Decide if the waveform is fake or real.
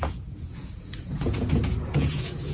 fake